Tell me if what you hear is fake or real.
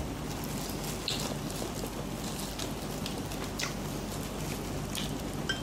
real